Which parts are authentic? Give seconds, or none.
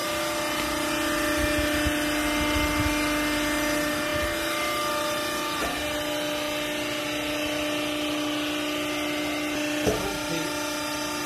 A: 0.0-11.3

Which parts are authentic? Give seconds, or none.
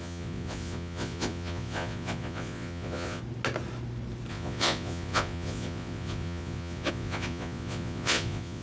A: 3.2-4.3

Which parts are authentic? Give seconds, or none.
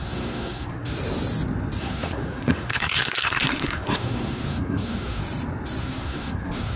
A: 0.9-1.8; 5.2-5.8